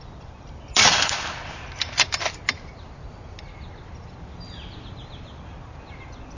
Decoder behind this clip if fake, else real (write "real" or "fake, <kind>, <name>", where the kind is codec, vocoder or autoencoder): real